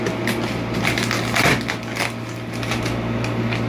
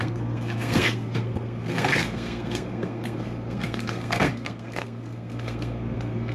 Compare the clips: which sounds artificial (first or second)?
second